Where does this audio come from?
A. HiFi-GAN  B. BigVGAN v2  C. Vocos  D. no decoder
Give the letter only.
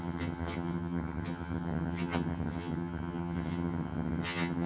A